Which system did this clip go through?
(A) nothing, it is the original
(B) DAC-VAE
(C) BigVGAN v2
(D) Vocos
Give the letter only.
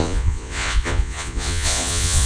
D